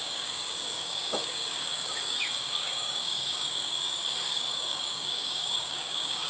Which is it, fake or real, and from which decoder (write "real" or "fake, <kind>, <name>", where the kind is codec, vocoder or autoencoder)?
fake, codec, DAC